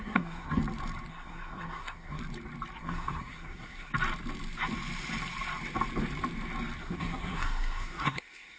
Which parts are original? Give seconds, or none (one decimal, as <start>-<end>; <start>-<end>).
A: 0.6-1.1; 2.2-2.8; 3.9-6.8